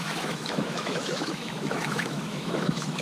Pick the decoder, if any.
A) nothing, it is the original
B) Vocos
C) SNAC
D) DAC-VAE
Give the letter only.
D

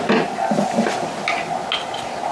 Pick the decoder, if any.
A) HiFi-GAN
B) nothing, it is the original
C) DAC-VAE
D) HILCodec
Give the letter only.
B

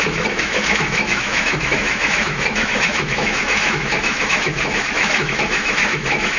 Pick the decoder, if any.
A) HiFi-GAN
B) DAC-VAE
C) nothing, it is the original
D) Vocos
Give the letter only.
B